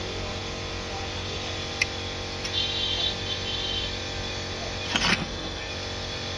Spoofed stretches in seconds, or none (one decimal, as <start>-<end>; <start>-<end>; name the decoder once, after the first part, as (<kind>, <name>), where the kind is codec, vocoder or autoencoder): 5.1-5.7 (codec, SNAC)